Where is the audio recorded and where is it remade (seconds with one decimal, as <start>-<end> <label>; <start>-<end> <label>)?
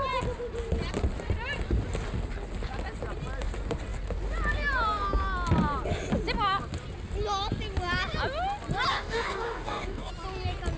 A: 0.0-8.9 recorded; 8.9-10.1 remade; 10.1-10.8 recorded